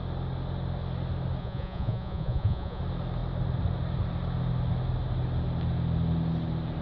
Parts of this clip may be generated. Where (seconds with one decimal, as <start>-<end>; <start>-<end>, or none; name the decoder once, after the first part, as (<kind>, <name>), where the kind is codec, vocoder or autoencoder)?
1.4-2.8 (vocoder, Vocos)